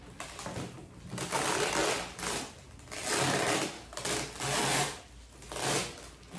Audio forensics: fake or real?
real